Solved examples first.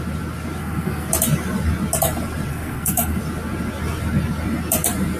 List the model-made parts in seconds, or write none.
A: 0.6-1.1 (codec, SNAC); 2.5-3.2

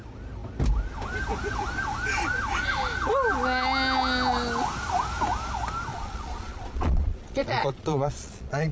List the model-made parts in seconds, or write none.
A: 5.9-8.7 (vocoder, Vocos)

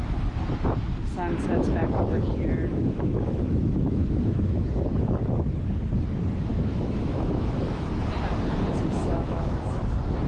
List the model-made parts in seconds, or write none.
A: 2.7-4.9 (autoencoder, DAC-VAE); 6.5-7.9; 9.0-9.8